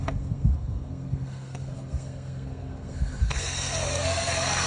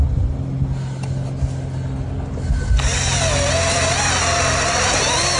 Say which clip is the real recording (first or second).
second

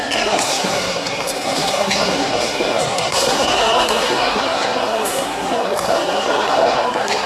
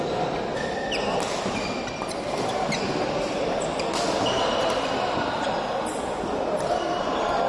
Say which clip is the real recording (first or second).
second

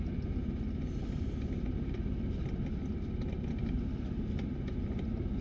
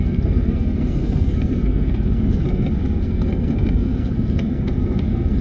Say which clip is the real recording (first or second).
first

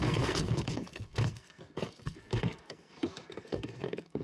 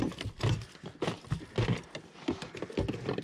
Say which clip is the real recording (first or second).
second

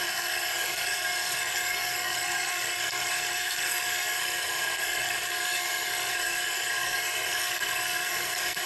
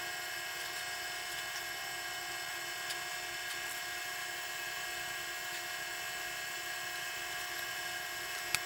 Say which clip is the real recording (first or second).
second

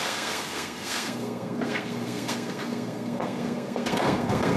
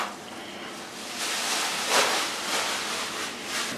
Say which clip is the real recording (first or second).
second